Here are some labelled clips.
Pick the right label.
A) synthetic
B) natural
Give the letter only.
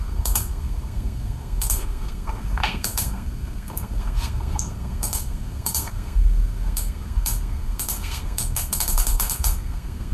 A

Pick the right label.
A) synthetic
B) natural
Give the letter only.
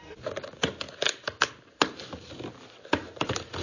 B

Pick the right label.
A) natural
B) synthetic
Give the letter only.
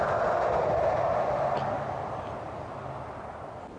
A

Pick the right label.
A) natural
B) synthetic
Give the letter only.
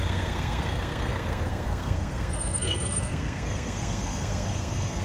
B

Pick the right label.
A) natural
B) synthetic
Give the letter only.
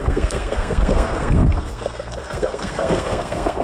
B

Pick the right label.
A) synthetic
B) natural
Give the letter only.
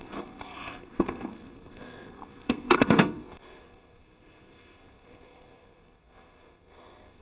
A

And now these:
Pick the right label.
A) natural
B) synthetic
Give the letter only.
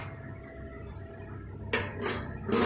A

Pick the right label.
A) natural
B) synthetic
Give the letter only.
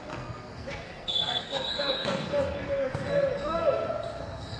B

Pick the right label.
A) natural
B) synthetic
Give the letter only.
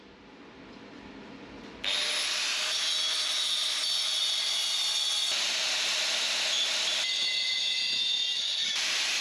A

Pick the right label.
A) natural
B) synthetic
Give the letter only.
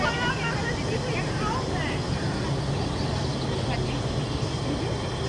A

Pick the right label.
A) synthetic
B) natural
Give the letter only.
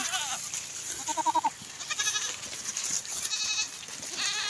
B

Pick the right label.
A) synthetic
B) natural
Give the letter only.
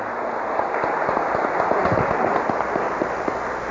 B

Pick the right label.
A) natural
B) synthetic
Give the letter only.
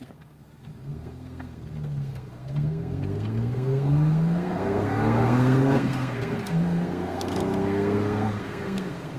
B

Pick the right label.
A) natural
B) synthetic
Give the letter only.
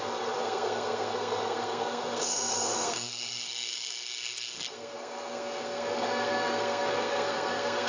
B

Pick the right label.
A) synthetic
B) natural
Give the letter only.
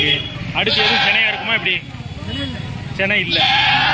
B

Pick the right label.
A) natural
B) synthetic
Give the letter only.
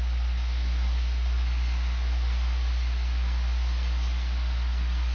B